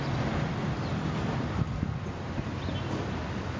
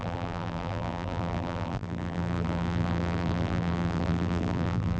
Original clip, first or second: first